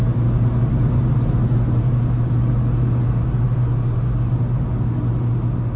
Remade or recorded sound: recorded